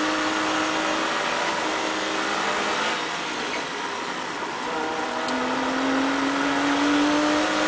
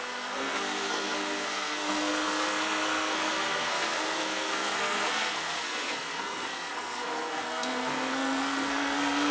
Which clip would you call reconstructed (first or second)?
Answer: second